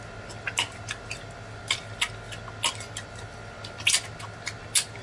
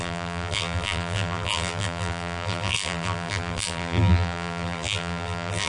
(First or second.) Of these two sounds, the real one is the first